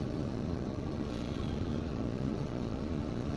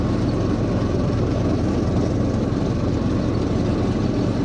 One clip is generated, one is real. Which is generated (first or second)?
first